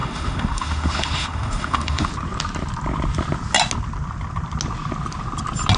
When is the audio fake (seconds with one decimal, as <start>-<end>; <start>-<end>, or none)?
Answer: 0.0-2.1